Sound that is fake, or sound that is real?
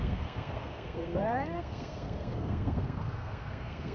fake